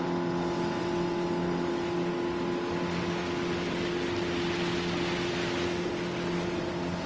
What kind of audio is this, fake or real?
real